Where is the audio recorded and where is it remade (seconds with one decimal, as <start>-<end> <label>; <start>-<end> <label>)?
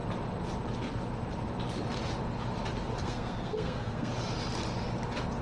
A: 0.0-3.0 recorded; 3.0-4.1 remade; 4.1-5.4 recorded